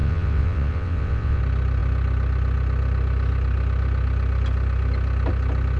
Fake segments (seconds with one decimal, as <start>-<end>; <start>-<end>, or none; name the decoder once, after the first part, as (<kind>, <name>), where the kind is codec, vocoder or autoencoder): 0.0-1.4 (vocoder, WaveNeXt)